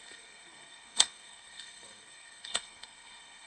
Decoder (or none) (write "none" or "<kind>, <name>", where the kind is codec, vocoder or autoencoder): codec, SNAC